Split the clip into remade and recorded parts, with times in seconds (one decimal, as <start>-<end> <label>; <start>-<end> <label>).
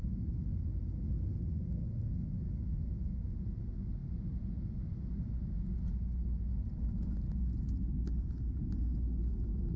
0.0-9.8 recorded